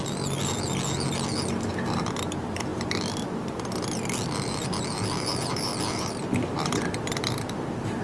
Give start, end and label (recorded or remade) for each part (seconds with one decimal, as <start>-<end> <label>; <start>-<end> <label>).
0.0-8.0 recorded